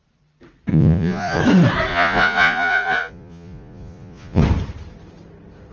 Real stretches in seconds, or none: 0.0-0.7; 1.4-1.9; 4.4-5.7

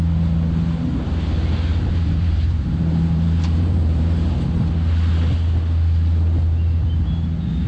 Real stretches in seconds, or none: 0.0-1.7; 4.2-7.7

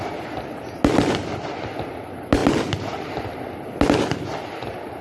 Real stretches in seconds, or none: 0.0-5.0

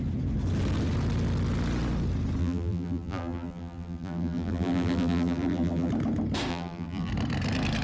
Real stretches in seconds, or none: 0.0-2.4; 5.9-6.5; 7.1-7.8